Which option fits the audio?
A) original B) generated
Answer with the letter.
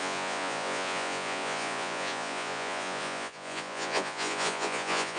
B